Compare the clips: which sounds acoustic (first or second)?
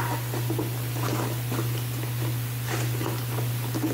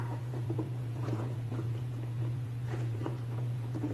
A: first